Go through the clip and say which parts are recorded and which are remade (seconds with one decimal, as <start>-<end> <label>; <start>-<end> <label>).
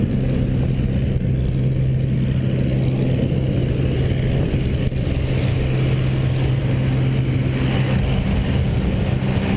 0.0-9.6 recorded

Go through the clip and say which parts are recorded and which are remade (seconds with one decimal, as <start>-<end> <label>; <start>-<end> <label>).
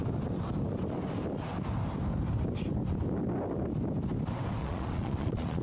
0.0-4.6 recorded; 4.6-5.6 remade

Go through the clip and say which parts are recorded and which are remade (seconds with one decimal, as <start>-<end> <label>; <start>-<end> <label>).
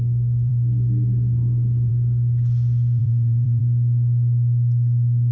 0.0-3.0 recorded; 3.0-3.6 remade; 3.6-5.3 recorded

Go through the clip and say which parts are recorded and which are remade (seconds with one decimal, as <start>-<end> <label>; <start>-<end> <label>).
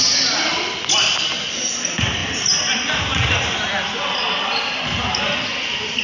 0.0-6.0 recorded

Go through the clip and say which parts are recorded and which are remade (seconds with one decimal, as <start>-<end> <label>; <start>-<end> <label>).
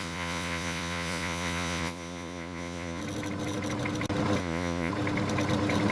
0.0-3.0 remade; 3.0-4.4 recorded; 4.4-4.9 remade; 4.9-5.9 recorded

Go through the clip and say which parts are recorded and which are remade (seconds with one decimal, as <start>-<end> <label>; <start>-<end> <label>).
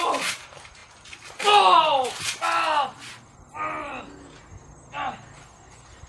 0.0-6.1 recorded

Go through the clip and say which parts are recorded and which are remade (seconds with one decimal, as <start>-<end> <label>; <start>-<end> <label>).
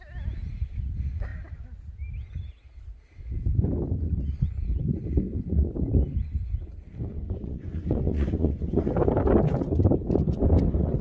0.0-7.1 recorded; 7.1-8.9 remade; 8.9-11.0 recorded